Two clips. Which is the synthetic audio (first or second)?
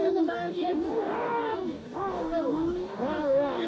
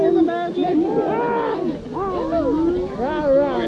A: first